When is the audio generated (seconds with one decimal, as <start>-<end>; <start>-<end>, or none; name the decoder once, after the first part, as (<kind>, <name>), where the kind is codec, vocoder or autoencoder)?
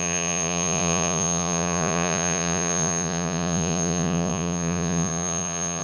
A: 0.0-5.8 (vocoder, Vocos)